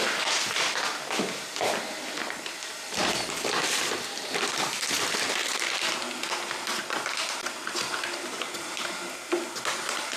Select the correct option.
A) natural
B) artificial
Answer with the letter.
A